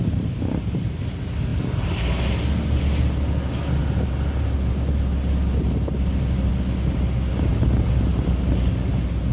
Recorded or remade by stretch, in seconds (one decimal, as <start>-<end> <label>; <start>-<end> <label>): 0.0-9.3 recorded

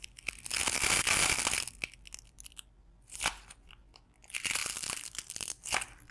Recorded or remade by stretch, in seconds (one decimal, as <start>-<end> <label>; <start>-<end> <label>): 0.0-6.1 recorded